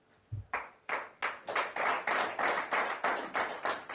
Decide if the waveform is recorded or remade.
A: recorded